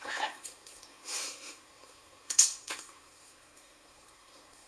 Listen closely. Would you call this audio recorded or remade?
remade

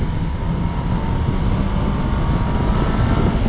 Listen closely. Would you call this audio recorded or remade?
recorded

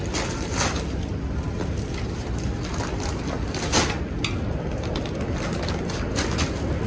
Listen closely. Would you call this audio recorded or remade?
recorded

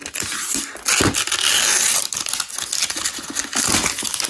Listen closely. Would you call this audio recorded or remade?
recorded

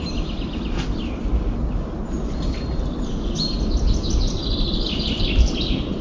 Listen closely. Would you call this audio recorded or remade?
recorded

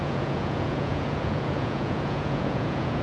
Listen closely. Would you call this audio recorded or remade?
remade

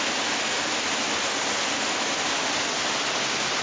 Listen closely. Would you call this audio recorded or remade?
recorded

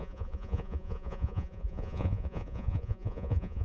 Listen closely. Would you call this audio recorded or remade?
remade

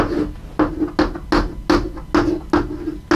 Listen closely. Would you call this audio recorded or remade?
recorded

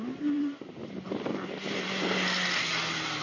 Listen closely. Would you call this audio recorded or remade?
recorded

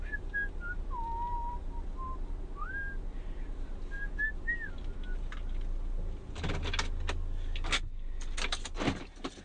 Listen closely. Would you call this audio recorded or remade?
recorded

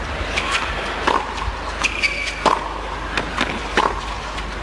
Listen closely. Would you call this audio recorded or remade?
recorded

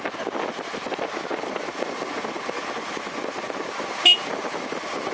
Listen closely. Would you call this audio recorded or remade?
recorded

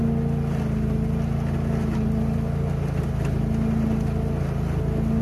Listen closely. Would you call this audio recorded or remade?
recorded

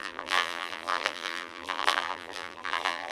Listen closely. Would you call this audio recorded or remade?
remade